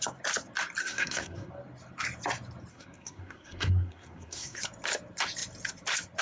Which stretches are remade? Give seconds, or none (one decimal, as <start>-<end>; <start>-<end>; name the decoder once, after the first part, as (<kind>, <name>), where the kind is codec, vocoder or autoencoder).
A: 0.8-1.5 (codec, SNAC); 2.7-4.6